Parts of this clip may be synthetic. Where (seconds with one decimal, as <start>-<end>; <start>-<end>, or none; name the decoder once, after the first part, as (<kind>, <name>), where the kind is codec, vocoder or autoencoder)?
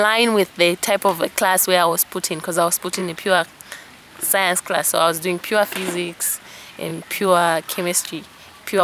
1.3-2.0 (vocoder, BigVGAN v2); 3.0-3.9; 6.9-8.8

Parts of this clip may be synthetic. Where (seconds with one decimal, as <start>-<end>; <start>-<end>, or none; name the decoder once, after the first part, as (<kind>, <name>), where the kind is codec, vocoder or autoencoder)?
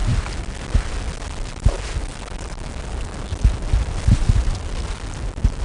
none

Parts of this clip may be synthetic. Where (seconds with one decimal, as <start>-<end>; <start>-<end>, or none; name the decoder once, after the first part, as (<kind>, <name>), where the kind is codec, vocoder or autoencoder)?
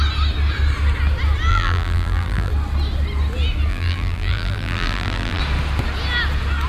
1.5-2.5 (vocoder, BigVGAN v2); 3.7-5.4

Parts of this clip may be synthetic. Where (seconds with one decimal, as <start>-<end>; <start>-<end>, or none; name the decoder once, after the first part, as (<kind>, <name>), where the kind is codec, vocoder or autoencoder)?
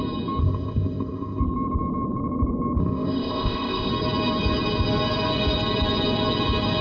0.4-1.4 (codec, ZipCodec); 2.8-3.9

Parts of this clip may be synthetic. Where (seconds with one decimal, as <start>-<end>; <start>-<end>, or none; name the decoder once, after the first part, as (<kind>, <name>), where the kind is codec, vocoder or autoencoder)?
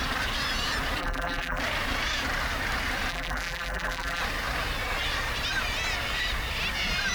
1.0-1.6 (vocoder, BigVGAN v2); 3.1-4.2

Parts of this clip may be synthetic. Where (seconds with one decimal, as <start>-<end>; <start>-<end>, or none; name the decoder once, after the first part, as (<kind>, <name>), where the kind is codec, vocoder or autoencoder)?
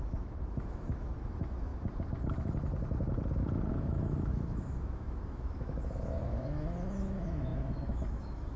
0.0-1.7 (autoencoder, DAC-VAE); 3.7-8.6